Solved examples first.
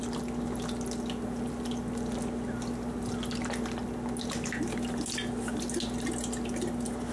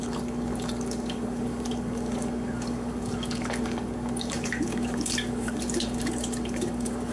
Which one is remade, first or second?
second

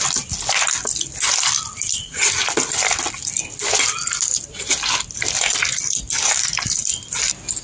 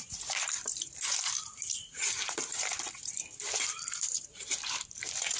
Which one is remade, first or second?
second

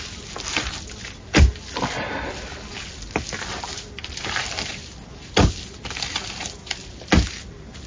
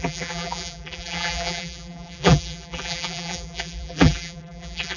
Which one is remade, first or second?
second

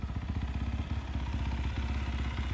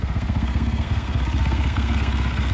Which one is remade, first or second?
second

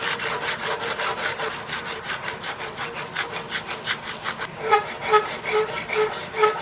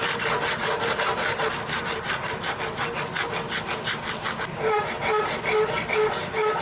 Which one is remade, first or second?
first